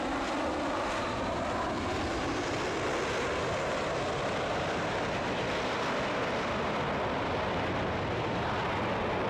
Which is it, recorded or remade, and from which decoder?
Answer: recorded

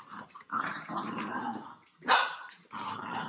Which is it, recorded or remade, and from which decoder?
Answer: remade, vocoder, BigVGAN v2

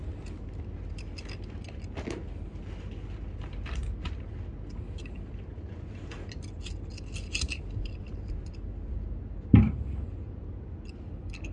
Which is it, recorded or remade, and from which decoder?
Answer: recorded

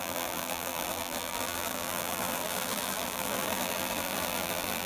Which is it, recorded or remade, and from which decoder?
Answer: remade, vocoder, BigVGAN v2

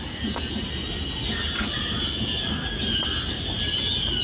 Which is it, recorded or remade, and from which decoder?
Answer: recorded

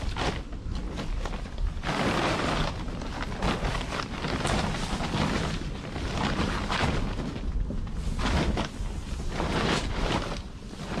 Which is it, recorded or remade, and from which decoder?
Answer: recorded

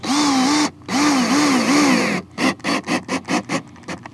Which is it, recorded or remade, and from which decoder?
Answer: recorded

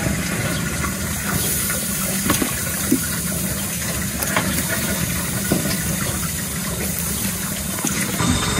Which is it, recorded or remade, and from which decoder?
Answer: recorded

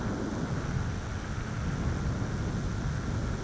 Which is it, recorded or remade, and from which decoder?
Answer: recorded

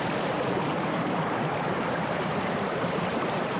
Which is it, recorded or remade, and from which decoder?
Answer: remade, vocoder, BigVGAN v2